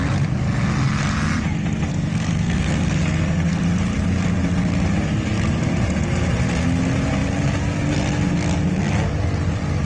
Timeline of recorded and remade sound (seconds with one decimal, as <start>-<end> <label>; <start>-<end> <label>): 0.0-1.9 recorded; 1.9-3.6 remade; 3.6-9.9 recorded

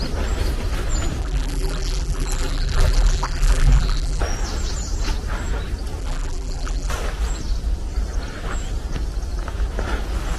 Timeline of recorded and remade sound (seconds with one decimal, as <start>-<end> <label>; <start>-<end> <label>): 0.0-1.2 recorded; 1.2-4.2 remade; 4.2-6.0 recorded; 6.0-6.9 remade; 6.9-10.4 recorded